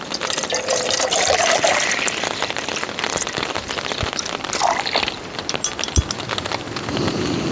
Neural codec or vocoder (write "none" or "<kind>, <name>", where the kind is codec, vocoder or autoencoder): none